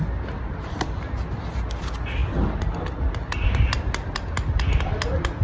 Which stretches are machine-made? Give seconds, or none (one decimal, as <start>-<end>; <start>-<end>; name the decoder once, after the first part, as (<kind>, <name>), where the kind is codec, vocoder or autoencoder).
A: none